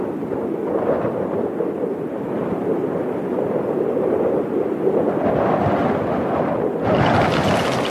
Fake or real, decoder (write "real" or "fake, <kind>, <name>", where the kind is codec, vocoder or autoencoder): real